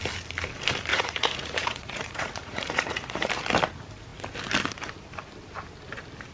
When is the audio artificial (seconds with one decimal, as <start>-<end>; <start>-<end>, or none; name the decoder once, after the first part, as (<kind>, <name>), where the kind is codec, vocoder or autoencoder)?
0.9-3.3 (vocoder, Vocos)